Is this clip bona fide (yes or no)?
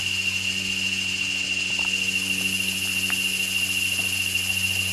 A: yes